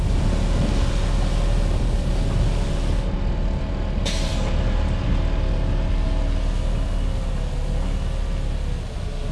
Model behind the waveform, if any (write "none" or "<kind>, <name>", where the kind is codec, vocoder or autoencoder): none